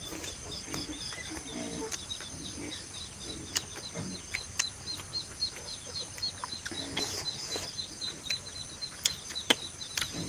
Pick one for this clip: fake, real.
real